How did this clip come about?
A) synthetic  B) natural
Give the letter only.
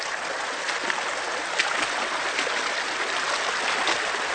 B